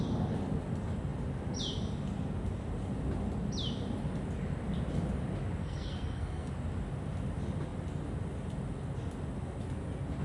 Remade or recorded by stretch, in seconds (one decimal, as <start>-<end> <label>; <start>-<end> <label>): 0.0-5.6 recorded; 5.6-6.5 remade; 6.5-10.2 recorded

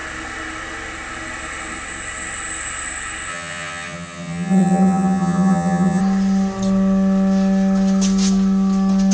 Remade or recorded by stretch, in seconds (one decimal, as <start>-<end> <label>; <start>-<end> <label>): 0.0-3.3 recorded; 3.3-6.0 remade; 6.0-9.1 recorded

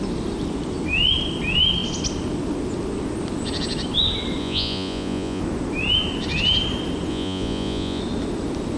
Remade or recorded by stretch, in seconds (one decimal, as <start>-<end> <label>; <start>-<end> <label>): 0.0-4.4 recorded; 4.4-5.4 remade; 5.4-7.1 recorded; 7.1-8.0 remade; 8.0-8.8 recorded

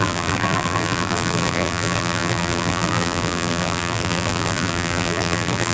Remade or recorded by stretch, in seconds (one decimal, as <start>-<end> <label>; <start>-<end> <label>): 0.0-5.7 remade

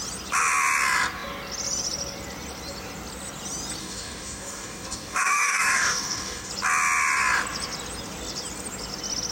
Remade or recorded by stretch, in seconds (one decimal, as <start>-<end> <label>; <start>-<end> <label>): 0.0-3.8 recorded; 3.8-6.5 remade; 6.5-9.3 recorded

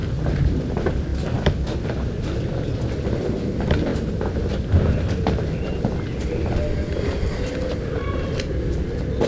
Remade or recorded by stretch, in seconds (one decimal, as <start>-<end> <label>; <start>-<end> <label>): 0.0-0.7 remade; 0.7-3.9 recorded; 3.9-4.5 remade; 4.5-9.3 recorded